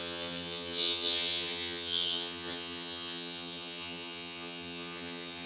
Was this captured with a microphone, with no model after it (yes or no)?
no